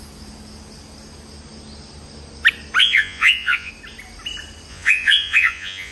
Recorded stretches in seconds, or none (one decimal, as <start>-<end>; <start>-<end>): 0.0-2.8; 3.7-4.7